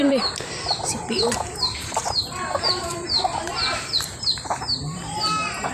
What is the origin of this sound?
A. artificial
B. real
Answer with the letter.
A